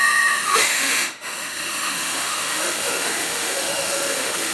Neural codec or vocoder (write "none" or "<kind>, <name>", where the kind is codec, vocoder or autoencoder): autoencoder, DAC-VAE